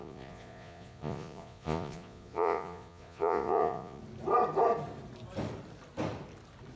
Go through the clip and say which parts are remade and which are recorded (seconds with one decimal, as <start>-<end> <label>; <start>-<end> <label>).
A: 0.0-4.0 remade; 4.0-6.8 recorded